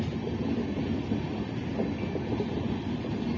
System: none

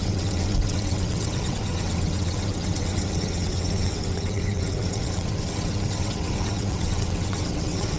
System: vocoder, WaveNeXt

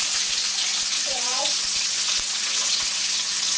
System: vocoder, WaveNeXt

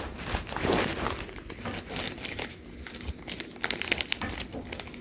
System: none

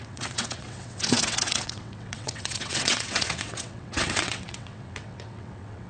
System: vocoder, WaveNeXt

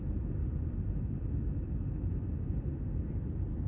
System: none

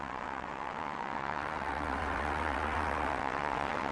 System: vocoder, WaveNeXt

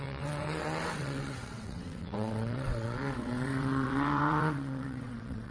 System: vocoder, WaveNeXt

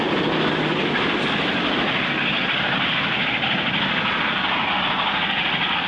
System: none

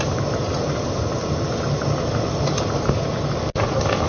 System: none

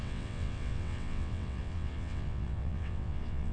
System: vocoder, WaveNeXt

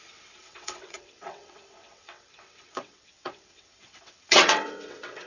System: vocoder, WaveNeXt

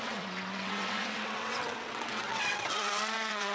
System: vocoder, WaveNeXt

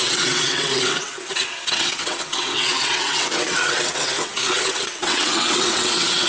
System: vocoder, WaveNeXt